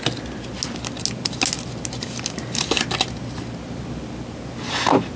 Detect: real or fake real